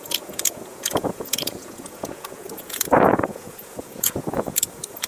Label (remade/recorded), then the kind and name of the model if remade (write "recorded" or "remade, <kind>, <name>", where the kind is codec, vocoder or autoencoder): remade, vocoder, Vocos